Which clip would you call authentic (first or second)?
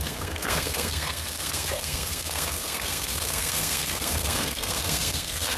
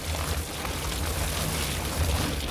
second